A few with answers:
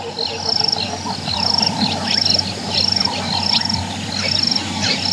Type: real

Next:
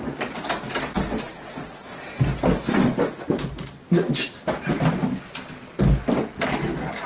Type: real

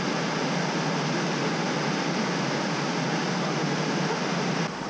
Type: real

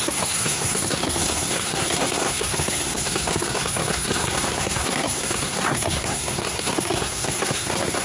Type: fake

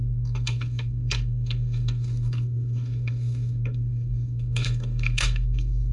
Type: fake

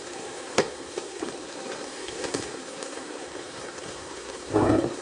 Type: fake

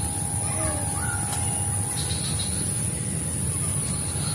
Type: real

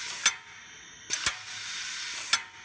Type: real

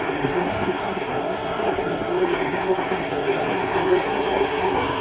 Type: fake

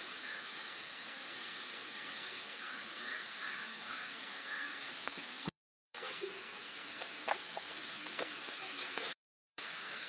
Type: fake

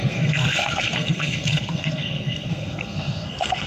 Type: fake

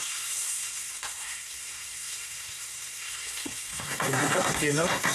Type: fake